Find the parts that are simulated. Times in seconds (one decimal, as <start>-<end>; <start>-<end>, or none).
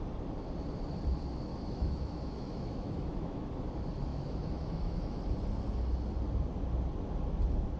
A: 1.5-3.5; 4.1-5.2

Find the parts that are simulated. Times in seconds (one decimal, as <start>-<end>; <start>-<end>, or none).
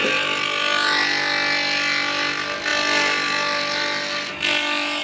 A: none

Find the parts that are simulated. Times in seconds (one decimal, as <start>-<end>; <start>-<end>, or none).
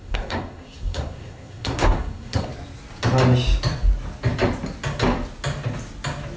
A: 0.0-2.5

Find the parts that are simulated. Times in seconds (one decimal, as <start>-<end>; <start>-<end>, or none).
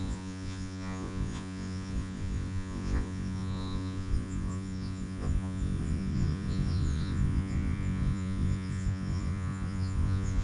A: 0.0-10.4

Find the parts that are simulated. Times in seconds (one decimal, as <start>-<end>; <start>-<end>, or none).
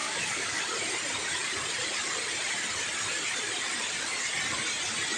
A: 0.0-0.6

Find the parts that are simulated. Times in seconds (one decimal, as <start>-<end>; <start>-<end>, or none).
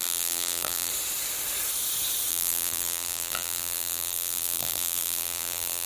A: 0.0-0.9; 2.3-5.9